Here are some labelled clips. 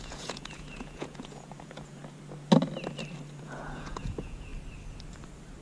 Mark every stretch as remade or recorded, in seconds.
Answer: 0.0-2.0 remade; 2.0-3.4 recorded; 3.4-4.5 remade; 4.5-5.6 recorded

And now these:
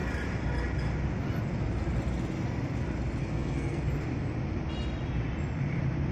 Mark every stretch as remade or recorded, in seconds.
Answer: 0.0-3.2 recorded; 3.2-3.8 remade; 3.8-6.1 recorded

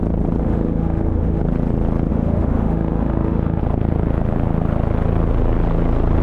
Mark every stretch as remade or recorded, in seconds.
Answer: 0.0-0.4 recorded; 0.4-1.4 remade; 1.4-2.1 recorded; 2.1-3.6 remade; 3.6-6.2 recorded

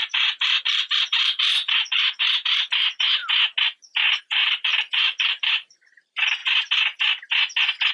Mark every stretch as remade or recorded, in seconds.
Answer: 0.0-3.2 remade; 3.2-4.2 recorded; 4.2-6.4 remade; 6.4-7.9 recorded

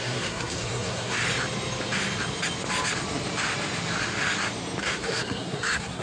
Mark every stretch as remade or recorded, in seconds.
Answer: 0.0-1.2 remade; 1.2-4.8 recorded; 4.8-6.0 remade

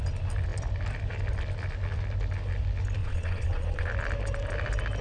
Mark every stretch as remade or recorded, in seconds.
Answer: 0.0-3.0 recorded; 3.0-3.9 remade; 3.9-5.0 recorded

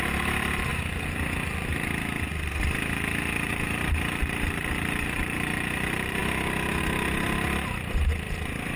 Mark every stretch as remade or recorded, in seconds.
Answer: 0.0-0.7 remade; 0.7-3.5 recorded; 3.5-6.2 remade; 6.2-6.8 recorded; 6.8-8.8 remade

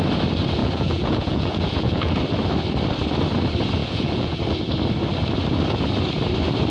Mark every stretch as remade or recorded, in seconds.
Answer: 0.0-0.6 recorded; 0.6-2.2 remade; 2.2-3.8 recorded; 3.8-4.4 remade; 4.4-6.7 recorded